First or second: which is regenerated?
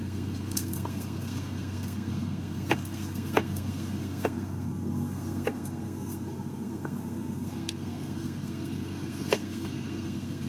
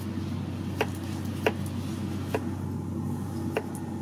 first